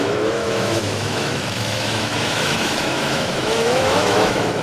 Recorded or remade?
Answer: remade